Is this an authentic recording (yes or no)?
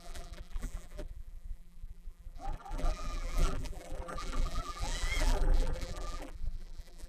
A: no